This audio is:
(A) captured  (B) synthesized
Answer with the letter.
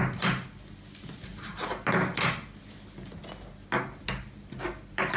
A